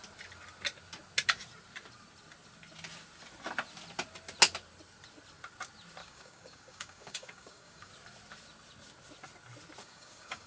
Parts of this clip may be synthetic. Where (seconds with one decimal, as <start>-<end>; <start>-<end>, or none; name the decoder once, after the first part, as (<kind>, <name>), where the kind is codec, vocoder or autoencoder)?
6.0-7.9 (codec, DAC); 9.8-10.5

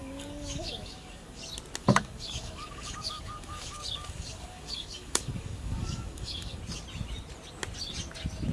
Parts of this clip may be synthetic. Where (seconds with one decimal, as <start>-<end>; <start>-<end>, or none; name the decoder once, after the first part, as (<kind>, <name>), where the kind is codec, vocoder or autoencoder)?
0.0-1.4 (codec, DAC); 1.8-6.6

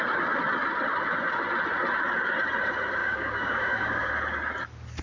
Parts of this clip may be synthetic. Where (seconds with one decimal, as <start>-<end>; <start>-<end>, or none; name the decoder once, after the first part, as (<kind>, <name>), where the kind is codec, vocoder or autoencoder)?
3.0-4.1 (codec, DAC)

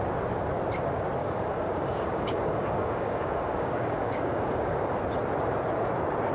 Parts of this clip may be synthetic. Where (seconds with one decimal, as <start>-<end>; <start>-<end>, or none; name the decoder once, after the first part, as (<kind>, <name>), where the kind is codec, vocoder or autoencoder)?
1.2-5.0 (codec, DAC)

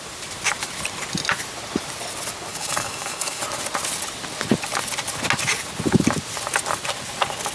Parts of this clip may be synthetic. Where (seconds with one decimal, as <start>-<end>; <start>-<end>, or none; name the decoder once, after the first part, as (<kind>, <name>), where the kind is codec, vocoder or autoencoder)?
2.5-3.4 (codec, DAC)

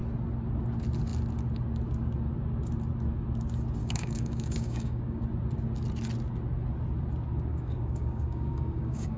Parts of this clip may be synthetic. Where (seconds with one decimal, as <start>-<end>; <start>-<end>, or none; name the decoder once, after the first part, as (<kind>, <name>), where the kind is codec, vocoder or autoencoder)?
3.8-5.2 (codec, DAC); 7.5-9.2

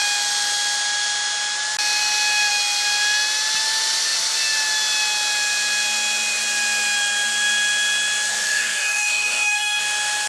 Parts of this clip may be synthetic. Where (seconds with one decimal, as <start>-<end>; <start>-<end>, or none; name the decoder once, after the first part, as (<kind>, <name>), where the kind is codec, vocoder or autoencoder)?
8.3-9.8 (codec, DAC)

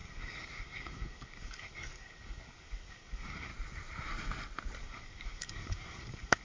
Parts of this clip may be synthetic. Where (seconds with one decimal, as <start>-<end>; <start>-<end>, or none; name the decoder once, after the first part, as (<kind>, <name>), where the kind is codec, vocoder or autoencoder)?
0.0-3.5 (codec, DAC); 4.8-6.4